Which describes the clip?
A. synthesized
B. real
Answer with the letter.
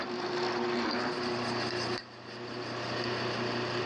B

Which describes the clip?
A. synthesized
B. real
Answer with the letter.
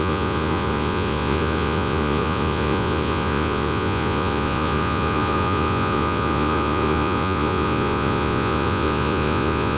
A